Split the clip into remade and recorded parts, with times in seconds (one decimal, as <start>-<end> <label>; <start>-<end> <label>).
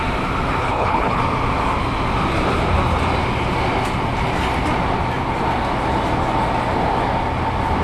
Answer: 0.0-0.6 recorded; 0.6-1.2 remade; 1.2-7.8 recorded